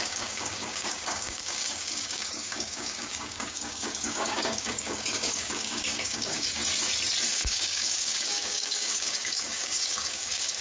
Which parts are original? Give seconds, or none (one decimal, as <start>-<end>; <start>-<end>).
6.6-7.3

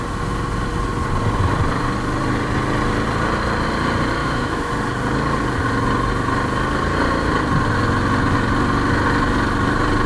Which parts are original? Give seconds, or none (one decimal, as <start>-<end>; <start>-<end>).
0.0-4.2; 4.7-10.1

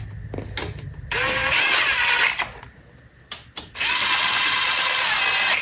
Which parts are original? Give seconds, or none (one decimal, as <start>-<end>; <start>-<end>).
0.0-5.6

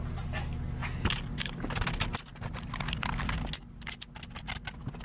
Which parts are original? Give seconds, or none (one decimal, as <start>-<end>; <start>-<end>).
0.0-5.0

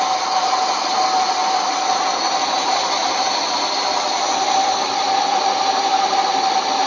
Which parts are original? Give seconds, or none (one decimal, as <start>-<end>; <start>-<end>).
0.0-6.9

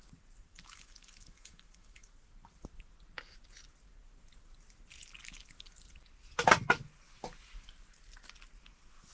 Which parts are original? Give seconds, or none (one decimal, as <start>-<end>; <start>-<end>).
0.0-0.5; 2.1-9.1